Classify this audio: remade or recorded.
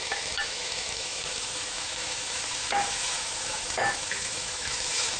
remade